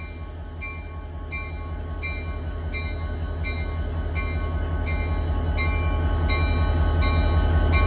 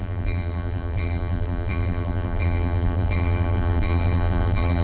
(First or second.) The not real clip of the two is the second